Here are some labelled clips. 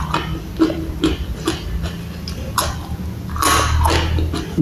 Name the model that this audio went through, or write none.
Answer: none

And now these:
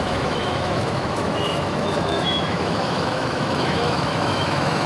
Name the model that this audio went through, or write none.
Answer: autoencoder, DAC-VAE